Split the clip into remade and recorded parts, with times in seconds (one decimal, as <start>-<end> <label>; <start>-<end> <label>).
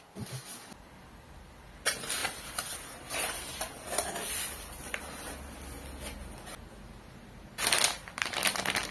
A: 0.0-2.2 recorded; 2.2-5.0 remade; 5.0-8.9 recorded